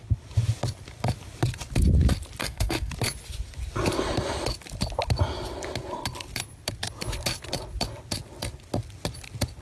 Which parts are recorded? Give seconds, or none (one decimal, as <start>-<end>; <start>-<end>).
0.0-2.4; 2.9-9.6

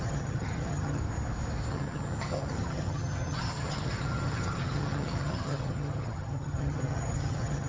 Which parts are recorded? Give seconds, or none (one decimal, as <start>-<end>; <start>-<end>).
1.0-1.7

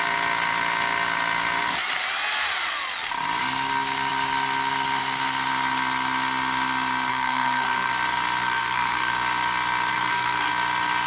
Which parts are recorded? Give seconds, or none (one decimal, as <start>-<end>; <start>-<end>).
0.0-7.1; 7.9-8.4; 9.1-9.9; 10.5-11.1